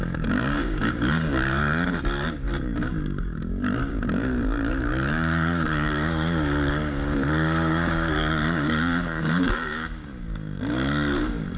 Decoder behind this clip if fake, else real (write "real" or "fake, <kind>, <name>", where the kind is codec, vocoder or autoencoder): fake, codec, DAC